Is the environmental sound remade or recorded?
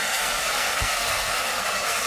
remade